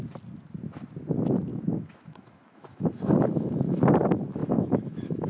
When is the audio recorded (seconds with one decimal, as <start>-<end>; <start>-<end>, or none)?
0.0-1.5; 3.8-4.4